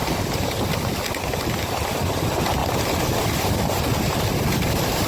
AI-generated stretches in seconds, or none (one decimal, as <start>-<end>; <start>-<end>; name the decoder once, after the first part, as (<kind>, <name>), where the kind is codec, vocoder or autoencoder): 0.6-2.6 (vocoder, BigVGAN v2); 3.4-5.1